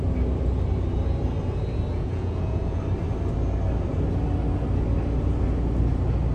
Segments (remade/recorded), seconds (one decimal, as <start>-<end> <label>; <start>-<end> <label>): 0.0-1.9 recorded; 1.9-2.8 remade; 2.8-6.3 recorded

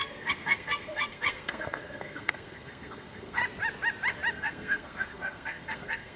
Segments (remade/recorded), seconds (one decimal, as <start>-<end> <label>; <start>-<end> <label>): 0.0-3.4 remade; 3.4-4.3 recorded; 4.3-6.2 remade

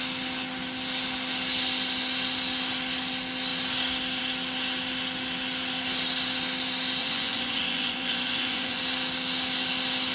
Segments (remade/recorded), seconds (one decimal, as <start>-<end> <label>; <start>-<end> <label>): 0.0-7.0 recorded; 7.0-8.8 remade; 8.8-10.1 recorded